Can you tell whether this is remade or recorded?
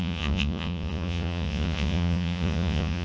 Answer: remade